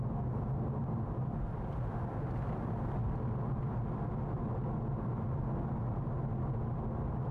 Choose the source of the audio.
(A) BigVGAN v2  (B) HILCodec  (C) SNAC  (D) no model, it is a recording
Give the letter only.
D